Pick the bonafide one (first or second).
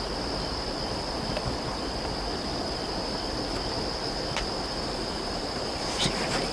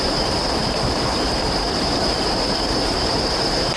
first